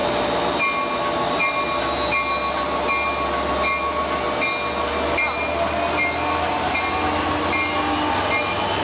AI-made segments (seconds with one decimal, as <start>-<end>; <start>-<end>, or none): none

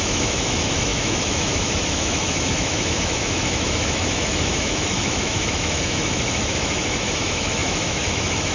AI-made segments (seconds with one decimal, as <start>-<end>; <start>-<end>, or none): 0.0-8.5

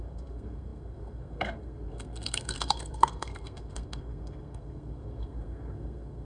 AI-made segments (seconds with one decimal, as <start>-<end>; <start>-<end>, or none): 0.0-6.2

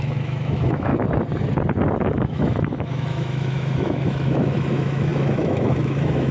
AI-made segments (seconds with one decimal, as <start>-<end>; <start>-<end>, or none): 0.0-0.9; 2.1-6.3

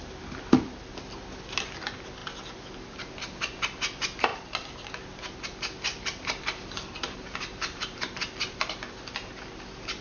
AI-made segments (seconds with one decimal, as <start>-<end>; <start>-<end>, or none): 5.9-8.6